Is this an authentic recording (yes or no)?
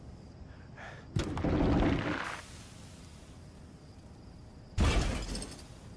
yes